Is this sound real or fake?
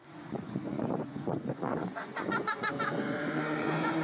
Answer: fake